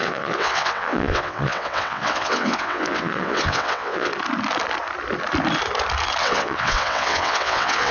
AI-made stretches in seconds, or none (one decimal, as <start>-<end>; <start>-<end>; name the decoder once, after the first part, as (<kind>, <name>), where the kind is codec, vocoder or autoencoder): 0.0-4.1 (vocoder, WaveNeXt); 6.2-7.9